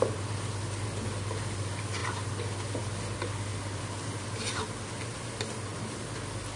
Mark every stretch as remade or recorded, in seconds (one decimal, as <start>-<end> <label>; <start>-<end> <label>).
0.0-6.6 recorded